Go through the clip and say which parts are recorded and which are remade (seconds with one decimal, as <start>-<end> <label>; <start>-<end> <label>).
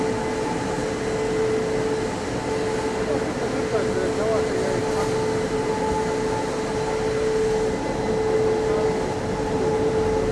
0.0-10.3 recorded